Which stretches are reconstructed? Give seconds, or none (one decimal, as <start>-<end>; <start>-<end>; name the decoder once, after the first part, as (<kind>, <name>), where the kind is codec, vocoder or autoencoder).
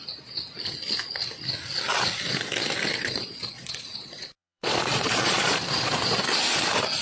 2.9-6.2 (vocoder, Vocos)